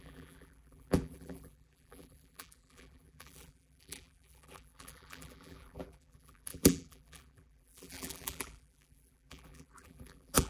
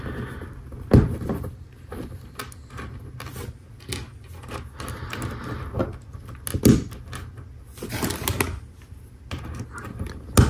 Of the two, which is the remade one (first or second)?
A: first